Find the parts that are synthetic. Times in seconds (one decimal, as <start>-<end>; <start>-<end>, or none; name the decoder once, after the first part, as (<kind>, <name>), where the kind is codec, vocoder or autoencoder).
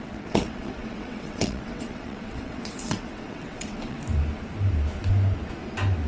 0.0-4.0 (vocoder, WaveNeXt)